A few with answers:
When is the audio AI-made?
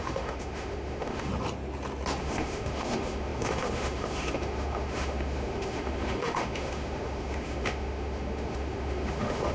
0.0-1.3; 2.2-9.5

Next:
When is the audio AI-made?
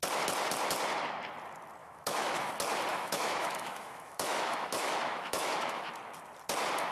1.8-2.5; 2.9-5.9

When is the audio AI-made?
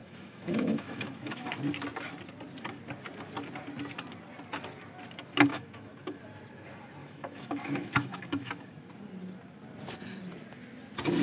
0.0-1.5; 5.5-6.2; 7.0-8.7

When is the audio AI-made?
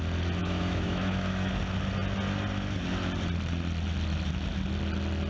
0.4-1.5